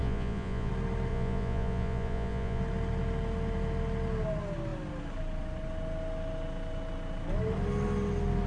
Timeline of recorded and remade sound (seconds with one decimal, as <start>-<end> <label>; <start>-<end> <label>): 0.0-0.7 remade; 0.7-1.1 recorded; 1.1-2.6 remade; 2.6-8.5 recorded